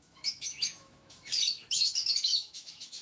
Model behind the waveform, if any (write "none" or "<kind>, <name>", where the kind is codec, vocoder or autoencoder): autoencoder, DAC-VAE